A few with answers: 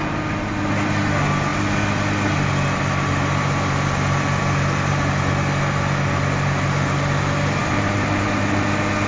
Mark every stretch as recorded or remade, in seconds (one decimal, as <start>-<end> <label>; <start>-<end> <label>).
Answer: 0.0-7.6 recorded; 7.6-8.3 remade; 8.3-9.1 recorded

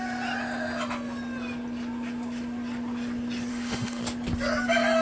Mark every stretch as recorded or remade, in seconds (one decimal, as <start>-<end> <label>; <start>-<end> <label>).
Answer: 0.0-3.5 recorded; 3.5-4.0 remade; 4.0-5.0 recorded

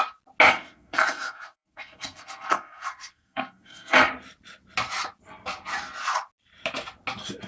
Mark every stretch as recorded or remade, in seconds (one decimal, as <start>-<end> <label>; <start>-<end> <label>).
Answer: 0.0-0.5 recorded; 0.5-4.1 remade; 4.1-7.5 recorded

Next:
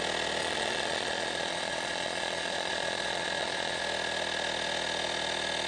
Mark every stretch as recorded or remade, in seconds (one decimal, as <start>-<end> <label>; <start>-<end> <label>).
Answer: 0.0-0.4 recorded; 0.4-3.8 remade; 3.8-5.7 recorded

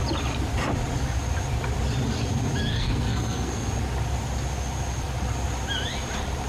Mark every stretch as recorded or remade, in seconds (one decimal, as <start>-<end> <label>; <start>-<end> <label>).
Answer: 0.0-2.7 recorded; 2.7-3.7 remade; 3.7-6.5 recorded

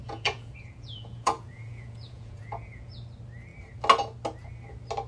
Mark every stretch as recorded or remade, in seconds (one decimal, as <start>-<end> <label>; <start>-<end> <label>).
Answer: 0.0-2.9 remade; 2.9-5.1 recorded

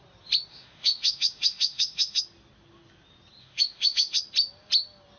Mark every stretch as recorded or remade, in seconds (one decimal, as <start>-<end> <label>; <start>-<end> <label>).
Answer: 0.0-0.5 recorded; 0.5-2.2 remade; 2.2-3.4 recorded; 3.4-4.2 remade; 4.2-5.2 recorded

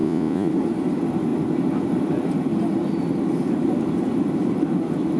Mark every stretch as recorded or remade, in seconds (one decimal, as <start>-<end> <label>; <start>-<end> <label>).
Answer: 0.0-0.5 remade; 0.5-5.2 recorded